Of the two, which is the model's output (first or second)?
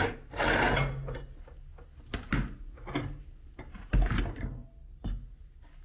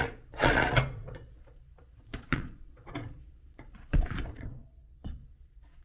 second